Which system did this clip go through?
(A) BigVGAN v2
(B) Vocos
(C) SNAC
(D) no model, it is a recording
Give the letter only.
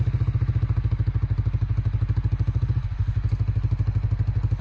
D